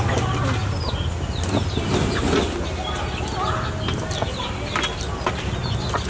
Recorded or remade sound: recorded